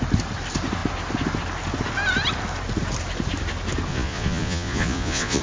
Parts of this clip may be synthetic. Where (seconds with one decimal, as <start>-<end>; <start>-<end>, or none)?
3.9-5.4